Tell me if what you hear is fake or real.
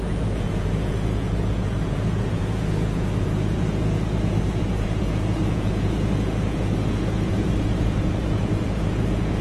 fake